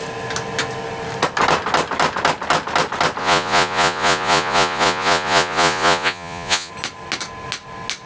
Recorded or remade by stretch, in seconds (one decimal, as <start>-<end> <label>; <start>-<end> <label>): 0.0-3.2 recorded; 3.2-6.7 remade; 6.7-8.1 recorded